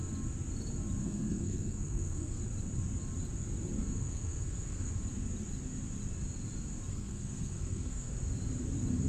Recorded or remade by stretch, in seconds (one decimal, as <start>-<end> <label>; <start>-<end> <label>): 0.0-1.0 recorded; 1.0-2.4 remade; 2.4-3.8 recorded; 3.8-4.9 remade; 4.9-6.9 recorded; 6.9-8.1 remade; 8.1-9.1 recorded